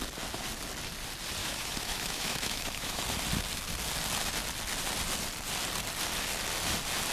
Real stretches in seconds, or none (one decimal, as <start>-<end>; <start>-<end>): 0.0-1.4; 3.0-7.1